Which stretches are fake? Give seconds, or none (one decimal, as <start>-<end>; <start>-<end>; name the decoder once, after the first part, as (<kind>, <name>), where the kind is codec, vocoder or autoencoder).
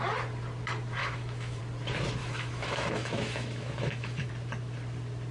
1.0-1.6 (autoencoder, DAC-VAE); 2.2-4.3